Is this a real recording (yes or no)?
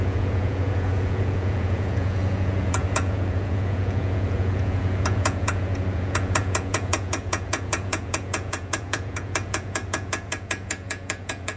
no